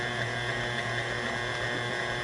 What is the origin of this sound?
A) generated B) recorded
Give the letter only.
B